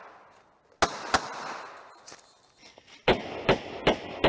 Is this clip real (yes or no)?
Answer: yes